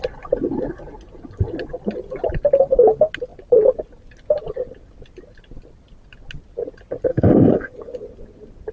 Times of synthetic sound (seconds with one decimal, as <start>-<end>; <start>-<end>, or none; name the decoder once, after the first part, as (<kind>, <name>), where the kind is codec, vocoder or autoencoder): 7.1-7.7 (codec, SNAC)